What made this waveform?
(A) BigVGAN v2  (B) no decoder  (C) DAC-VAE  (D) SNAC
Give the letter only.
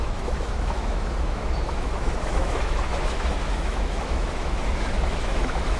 C